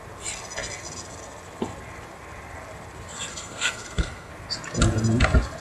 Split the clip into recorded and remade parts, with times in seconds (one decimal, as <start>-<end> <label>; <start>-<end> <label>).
0.0-3.3 recorded; 3.3-4.3 remade; 4.3-5.6 recorded